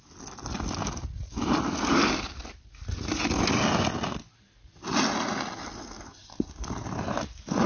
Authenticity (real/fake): real